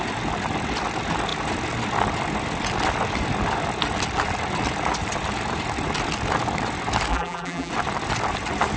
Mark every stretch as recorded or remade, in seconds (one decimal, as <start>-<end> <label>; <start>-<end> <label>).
0.0-7.1 recorded; 7.1-7.7 remade; 7.7-8.8 recorded